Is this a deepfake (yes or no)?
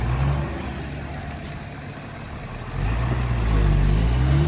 no